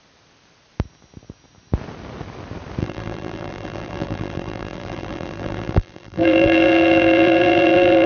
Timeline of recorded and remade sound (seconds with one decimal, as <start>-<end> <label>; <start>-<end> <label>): 0.0-2.8 recorded; 2.8-8.1 remade